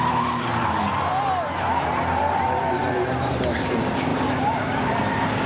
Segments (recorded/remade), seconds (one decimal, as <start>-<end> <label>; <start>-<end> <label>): 0.0-1.1 remade; 1.1-2.2 recorded; 2.2-5.5 remade